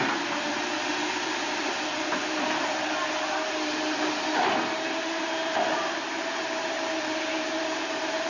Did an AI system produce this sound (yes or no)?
yes